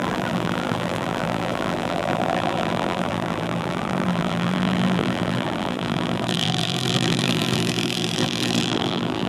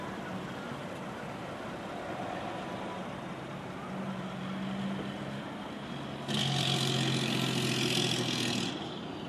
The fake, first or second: first